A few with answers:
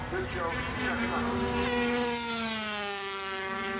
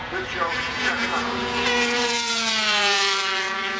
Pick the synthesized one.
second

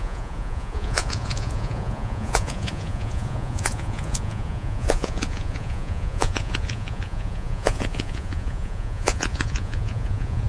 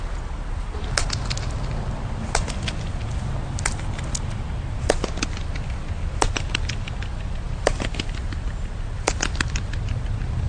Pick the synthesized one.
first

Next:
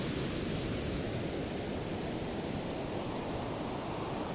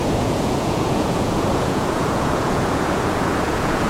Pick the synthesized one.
second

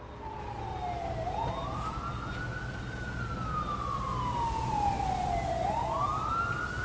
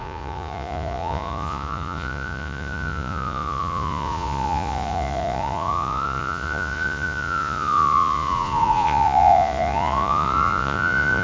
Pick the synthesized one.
second